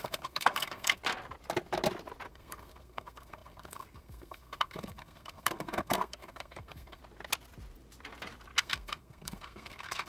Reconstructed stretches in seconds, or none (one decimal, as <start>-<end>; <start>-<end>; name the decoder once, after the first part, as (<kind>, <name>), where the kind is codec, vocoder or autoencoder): 0.0-1.0 (codec, SNAC); 2.3-7.0; 8.6-10.1